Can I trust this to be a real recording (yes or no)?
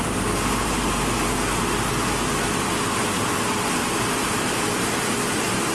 yes